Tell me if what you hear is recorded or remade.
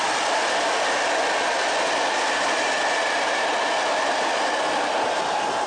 recorded